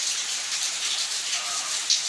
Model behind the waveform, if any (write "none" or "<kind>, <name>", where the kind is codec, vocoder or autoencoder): vocoder, BigVGAN v2